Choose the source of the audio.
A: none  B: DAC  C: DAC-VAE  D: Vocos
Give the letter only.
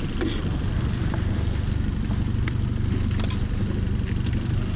A